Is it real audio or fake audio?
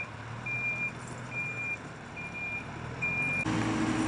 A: real